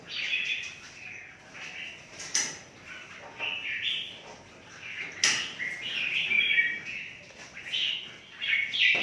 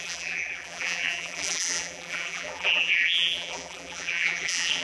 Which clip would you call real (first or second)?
first